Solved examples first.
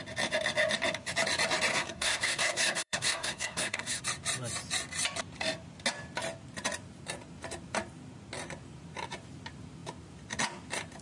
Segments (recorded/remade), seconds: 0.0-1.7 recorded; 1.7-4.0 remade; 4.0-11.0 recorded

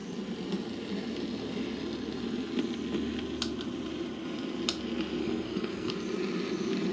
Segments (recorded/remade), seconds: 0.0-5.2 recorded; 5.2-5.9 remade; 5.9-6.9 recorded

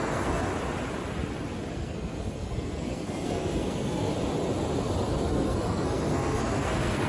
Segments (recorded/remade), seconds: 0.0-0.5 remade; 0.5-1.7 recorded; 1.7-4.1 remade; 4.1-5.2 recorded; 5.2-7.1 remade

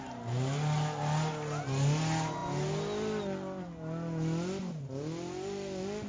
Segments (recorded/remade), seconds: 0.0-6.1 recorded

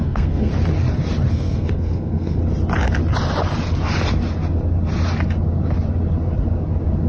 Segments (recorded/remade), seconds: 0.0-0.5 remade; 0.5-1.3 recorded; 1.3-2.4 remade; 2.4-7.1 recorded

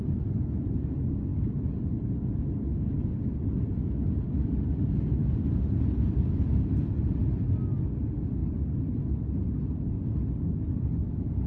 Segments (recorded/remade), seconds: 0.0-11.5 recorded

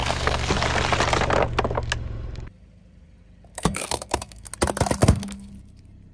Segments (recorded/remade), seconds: 0.0-0.5 remade; 0.5-3.5 recorded; 3.5-4.5 remade; 4.5-5.0 recorded; 5.0-5.5 remade; 5.5-6.1 recorded

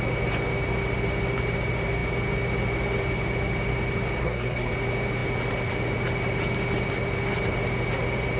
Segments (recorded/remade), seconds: 0.0-4.2 recorded; 4.2-4.7 remade; 4.7-8.4 recorded